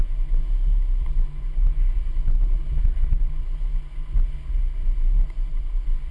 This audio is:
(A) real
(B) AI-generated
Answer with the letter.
A